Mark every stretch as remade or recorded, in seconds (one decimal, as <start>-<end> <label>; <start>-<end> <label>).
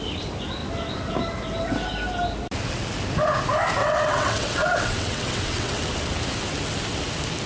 0.0-3.8 recorded; 3.8-5.8 remade; 5.8-7.5 recorded